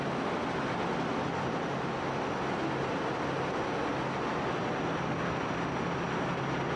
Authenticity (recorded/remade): recorded